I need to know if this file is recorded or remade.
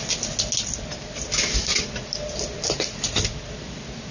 recorded